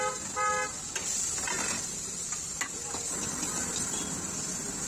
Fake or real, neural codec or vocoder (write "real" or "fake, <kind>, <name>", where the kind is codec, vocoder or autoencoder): real